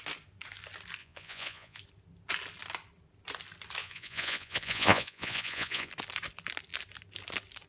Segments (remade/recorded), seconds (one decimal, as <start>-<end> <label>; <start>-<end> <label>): 0.0-1.0 recorded; 1.0-1.8 remade; 1.8-3.8 recorded; 3.8-5.9 remade; 5.9-7.7 recorded